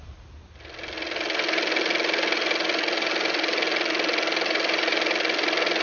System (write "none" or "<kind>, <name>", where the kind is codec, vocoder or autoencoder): none